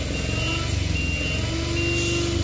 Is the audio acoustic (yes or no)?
yes